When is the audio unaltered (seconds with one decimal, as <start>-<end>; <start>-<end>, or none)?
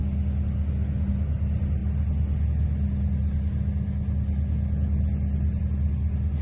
0.0-6.4